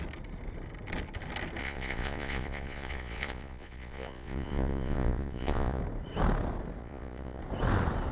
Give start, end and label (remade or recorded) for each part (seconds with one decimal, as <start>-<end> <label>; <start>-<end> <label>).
0.0-1.6 recorded; 1.6-5.8 remade; 5.8-6.8 recorded; 6.8-7.4 remade; 7.4-8.1 recorded